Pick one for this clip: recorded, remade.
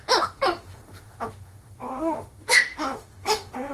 remade